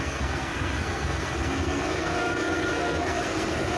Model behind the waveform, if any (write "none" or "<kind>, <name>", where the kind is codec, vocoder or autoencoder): codec, SNAC